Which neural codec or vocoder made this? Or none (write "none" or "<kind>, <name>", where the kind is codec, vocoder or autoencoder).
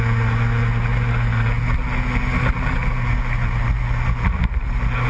none